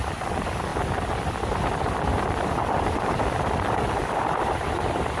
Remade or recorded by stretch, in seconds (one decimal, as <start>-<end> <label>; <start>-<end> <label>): 0.0-5.2 recorded